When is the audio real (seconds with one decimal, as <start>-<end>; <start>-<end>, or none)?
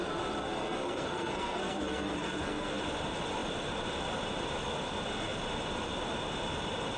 0.0-0.4; 2.8-7.0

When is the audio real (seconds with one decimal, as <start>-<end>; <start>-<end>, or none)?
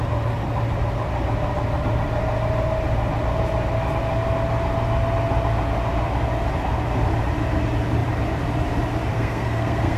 0.0-9.1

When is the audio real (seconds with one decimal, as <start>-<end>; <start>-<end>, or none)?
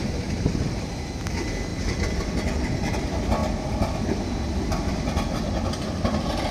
0.0-6.5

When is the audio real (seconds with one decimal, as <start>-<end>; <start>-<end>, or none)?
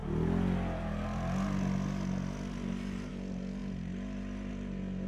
0.0-5.1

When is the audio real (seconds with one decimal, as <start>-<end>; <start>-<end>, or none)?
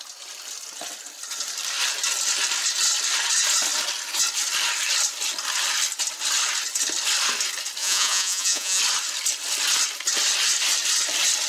0.0-7.8; 8.8-11.5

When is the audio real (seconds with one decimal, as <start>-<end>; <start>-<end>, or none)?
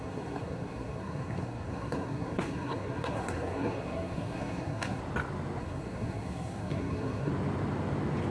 5.0-5.6; 7.3-8.3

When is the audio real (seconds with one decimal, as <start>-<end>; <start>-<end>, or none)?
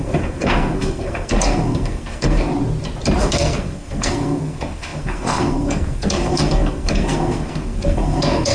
2.5-3.2